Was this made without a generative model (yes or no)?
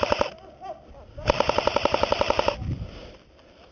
no